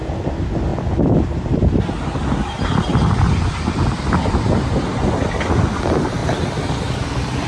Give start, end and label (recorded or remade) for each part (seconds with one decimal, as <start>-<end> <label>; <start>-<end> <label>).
0.0-0.7 recorded; 0.7-1.9 remade; 1.9-2.9 recorded; 2.9-4.5 remade; 4.5-7.5 recorded